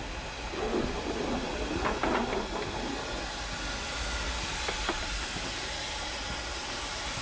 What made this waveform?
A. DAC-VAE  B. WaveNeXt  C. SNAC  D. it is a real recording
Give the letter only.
D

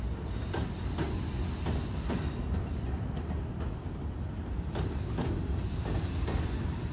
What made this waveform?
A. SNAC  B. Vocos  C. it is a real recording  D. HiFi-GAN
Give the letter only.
C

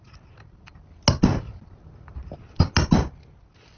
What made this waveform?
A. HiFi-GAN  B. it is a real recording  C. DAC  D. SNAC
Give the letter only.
B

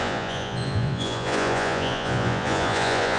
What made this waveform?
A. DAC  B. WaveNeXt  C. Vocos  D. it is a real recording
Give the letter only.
C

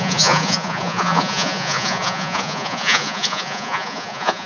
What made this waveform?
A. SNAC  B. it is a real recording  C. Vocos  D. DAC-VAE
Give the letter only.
C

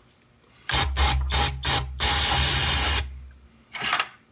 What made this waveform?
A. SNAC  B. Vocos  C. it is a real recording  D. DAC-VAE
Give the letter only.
C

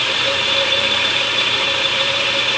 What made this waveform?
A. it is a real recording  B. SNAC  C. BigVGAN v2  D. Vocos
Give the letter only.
C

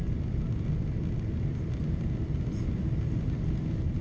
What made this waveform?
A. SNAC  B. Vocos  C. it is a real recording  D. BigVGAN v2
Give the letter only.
C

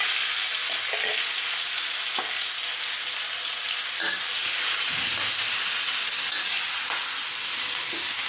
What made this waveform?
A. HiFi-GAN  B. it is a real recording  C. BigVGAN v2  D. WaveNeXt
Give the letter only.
B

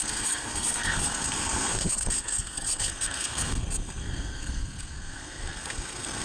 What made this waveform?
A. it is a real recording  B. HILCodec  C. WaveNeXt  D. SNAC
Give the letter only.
D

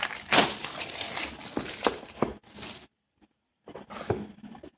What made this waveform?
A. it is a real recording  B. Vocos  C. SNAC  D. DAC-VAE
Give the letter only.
A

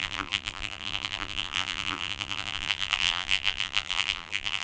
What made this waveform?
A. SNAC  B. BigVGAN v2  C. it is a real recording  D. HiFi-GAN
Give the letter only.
B